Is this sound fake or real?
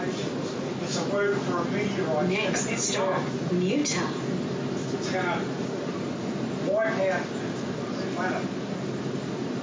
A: real